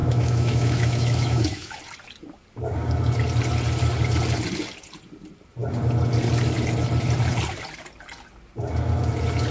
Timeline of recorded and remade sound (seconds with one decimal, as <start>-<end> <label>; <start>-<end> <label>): 0.0-1.8 remade; 1.8-9.5 recorded